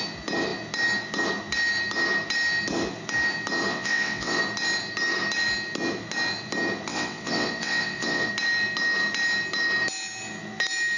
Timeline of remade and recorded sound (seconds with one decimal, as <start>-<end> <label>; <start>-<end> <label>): 0.0-3.7 recorded; 3.7-4.4 remade; 4.4-6.9 recorded; 6.9-8.3 remade; 8.3-11.0 recorded